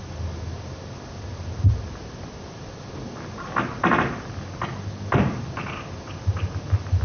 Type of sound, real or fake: real